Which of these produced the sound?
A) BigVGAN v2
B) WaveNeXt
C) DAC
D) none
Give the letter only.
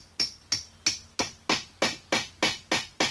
D